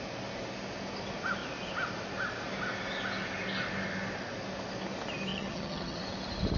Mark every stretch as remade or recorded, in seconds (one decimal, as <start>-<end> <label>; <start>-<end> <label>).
0.0-5.3 recorded; 5.3-6.0 remade; 6.0-6.6 recorded